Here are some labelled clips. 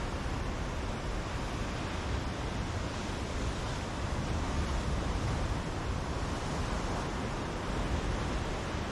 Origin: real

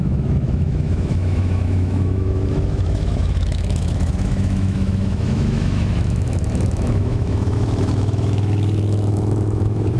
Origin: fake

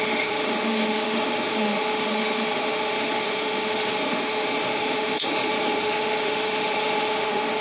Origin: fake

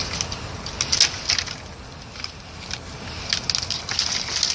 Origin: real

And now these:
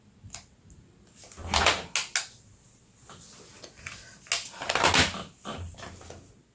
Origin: real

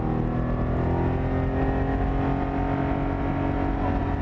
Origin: real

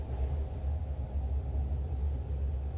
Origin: real